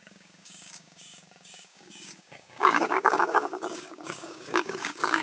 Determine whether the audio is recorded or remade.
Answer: remade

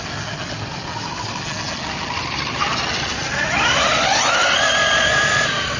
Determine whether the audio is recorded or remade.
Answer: recorded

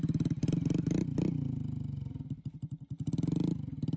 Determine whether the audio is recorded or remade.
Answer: recorded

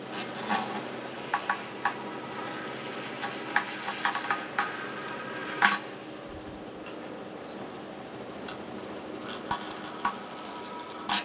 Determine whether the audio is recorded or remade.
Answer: recorded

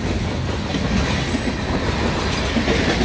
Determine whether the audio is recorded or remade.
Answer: recorded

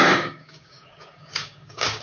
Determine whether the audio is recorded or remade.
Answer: remade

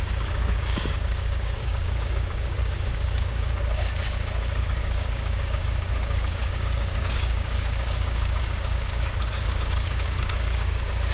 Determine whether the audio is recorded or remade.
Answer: remade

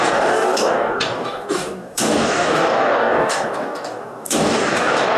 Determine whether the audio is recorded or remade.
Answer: remade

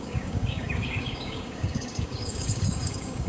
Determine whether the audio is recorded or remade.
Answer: remade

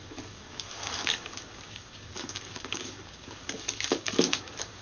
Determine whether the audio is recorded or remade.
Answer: remade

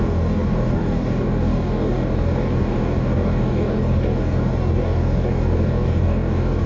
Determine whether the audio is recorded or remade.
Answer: remade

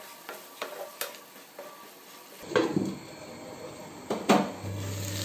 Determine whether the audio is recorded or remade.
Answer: recorded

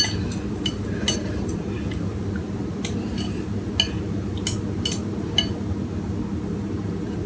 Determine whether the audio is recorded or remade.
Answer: recorded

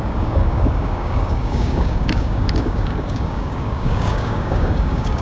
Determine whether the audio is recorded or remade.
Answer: remade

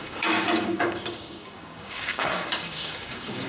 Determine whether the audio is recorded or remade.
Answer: remade